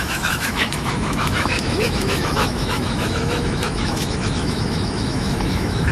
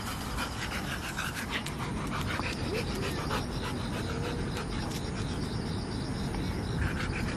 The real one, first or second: second